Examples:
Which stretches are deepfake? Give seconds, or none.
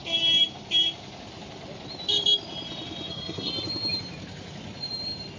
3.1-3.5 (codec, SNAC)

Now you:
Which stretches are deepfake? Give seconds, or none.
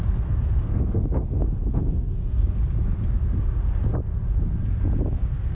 0.0-2.6 (codec, SNAC); 5.1-5.5